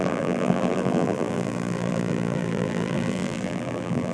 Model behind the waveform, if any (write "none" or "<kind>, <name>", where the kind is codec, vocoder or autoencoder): vocoder, BigVGAN v2